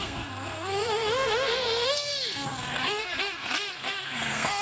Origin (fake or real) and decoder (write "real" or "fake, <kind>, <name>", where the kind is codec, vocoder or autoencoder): fake, codec, SNAC